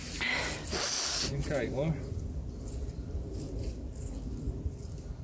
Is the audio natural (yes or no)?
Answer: yes